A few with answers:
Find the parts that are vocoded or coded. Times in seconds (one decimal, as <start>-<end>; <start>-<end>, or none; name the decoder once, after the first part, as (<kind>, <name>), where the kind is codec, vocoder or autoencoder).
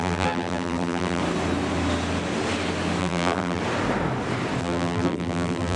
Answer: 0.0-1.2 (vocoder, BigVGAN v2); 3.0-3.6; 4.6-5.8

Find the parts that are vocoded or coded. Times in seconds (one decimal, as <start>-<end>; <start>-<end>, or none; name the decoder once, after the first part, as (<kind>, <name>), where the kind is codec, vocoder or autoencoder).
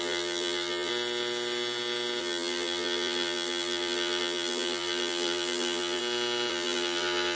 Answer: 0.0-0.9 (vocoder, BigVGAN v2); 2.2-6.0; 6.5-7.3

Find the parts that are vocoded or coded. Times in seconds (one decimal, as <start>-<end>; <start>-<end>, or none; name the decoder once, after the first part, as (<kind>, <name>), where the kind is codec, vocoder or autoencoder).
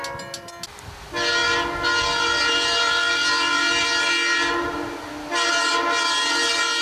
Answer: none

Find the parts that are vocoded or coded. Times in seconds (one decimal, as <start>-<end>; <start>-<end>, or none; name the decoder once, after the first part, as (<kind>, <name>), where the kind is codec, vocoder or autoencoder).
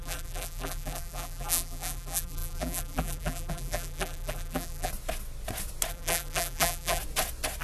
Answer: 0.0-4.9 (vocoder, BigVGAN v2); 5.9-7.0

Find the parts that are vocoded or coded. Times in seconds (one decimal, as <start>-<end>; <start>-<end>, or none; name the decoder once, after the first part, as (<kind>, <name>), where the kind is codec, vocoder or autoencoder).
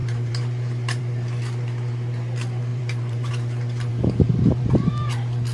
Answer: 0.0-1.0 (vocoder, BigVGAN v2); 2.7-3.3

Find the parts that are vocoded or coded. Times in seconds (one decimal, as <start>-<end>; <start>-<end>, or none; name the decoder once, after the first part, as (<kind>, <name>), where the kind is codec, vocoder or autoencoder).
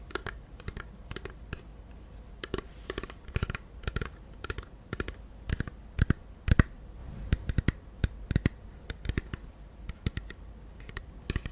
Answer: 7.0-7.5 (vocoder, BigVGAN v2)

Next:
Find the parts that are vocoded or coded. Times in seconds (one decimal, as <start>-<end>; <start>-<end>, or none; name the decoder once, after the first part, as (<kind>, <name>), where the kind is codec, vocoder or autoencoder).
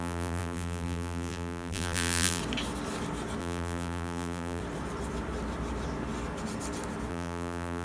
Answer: 0.0-2.4 (vocoder, BigVGAN v2); 3.4-4.6; 7.1-7.8